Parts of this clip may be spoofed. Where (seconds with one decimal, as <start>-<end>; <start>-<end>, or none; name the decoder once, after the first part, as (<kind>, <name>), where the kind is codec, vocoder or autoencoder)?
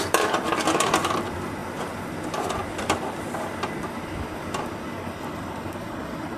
0.0-6.4 (vocoder, BigVGAN v2)